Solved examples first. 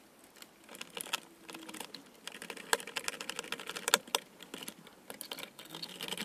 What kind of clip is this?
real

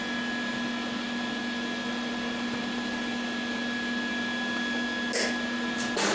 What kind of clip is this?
real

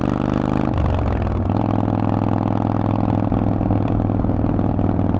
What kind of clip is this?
real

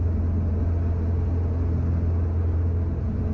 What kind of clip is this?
real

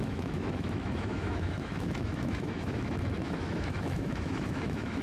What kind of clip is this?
fake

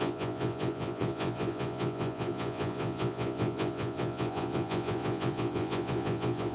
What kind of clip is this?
fake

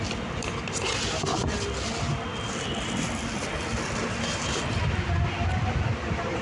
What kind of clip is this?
real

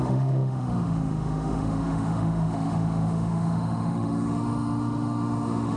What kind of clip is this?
fake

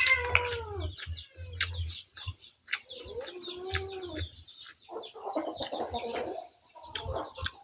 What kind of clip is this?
real